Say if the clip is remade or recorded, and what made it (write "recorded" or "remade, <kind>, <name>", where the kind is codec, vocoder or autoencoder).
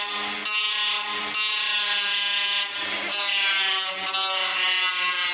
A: recorded